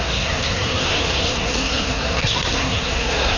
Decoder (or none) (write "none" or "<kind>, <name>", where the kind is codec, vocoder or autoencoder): codec, SNAC